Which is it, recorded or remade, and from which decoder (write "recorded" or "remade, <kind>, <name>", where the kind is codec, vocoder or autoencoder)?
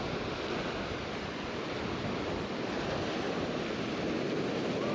recorded